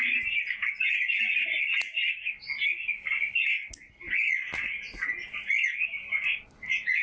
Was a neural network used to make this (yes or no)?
no